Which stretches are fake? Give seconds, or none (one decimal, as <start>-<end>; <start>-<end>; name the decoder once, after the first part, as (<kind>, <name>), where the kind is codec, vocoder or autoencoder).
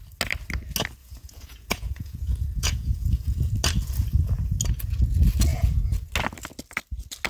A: 1.0-3.5 (vocoder, Vocos); 5.5-6.1